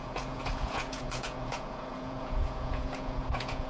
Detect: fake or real fake